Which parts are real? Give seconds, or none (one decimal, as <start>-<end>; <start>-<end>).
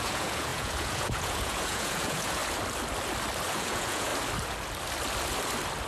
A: 2.4-3.5; 4.1-5.9